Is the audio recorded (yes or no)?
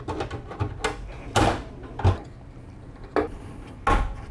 yes